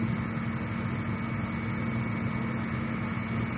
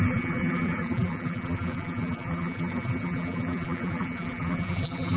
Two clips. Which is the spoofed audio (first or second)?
second